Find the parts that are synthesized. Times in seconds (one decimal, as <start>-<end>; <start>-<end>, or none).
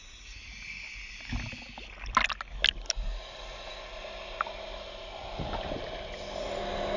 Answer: none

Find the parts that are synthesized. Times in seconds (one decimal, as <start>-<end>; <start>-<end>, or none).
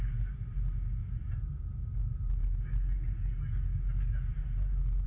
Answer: none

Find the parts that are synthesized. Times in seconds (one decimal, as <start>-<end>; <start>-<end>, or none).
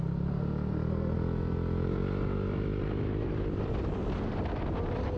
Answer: none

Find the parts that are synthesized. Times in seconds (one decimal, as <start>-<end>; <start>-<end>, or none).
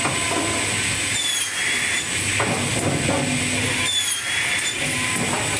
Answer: none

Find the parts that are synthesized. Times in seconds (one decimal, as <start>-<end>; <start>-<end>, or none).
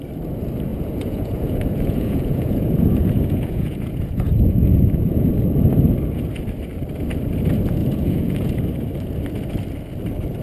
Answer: 0.7-5.3; 7.8-8.5